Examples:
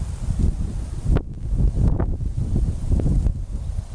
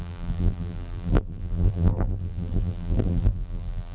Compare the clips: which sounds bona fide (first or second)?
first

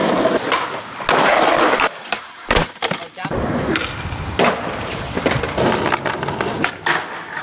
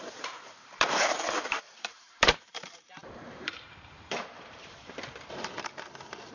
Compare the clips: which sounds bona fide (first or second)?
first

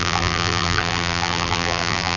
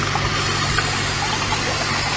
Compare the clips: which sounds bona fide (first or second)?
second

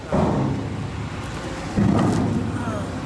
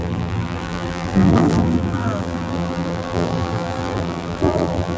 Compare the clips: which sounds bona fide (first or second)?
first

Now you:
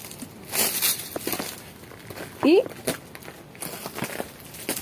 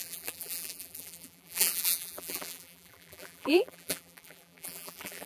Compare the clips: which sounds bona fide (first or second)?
first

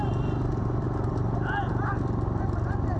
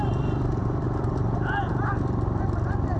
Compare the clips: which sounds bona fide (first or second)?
first